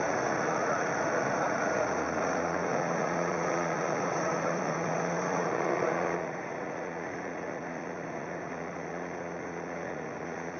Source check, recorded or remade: remade